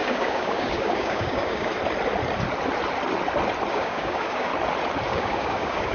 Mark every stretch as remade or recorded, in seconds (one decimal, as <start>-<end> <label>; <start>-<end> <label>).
0.0-1.7 remade; 1.7-3.7 recorded; 3.7-4.5 remade; 4.5-5.1 recorded; 5.1-5.9 remade